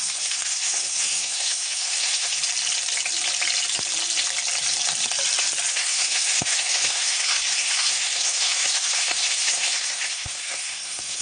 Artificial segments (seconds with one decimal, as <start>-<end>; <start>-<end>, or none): 0.0-2.4; 5.7-11.2